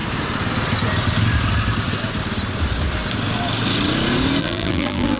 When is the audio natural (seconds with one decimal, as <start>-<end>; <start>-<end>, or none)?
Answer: 0.0-4.4